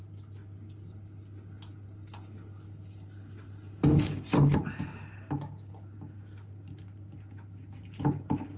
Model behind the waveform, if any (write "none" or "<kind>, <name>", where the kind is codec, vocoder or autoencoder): none